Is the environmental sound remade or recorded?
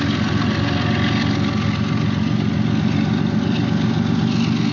recorded